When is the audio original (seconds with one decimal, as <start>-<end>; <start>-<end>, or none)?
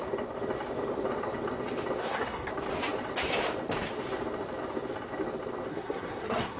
0.0-2.0; 2.5-5.7